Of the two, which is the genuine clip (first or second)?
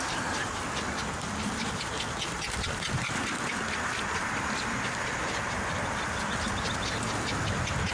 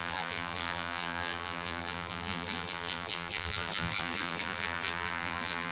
first